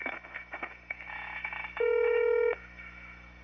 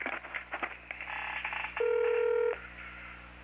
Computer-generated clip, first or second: first